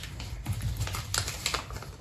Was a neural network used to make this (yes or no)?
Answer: no